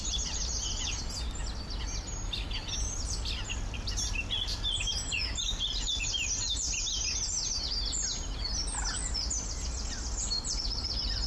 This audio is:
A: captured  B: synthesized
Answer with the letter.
A